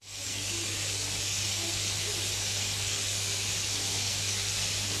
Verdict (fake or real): fake